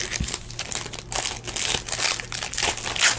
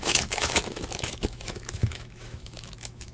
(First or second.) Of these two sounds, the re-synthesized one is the second